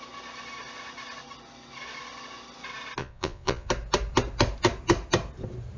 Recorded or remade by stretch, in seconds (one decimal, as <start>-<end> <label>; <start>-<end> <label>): 0.0-3.0 recorded; 3.0-3.7 remade; 3.7-5.8 recorded

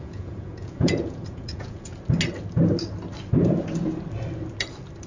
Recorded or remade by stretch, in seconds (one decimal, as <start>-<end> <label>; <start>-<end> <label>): 0.0-1.9 remade; 1.9-5.1 recorded